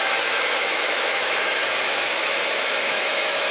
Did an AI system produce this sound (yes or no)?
yes